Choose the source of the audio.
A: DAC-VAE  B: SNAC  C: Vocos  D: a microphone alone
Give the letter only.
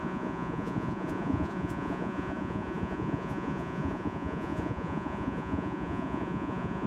C